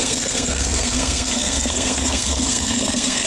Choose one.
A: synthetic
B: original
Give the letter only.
A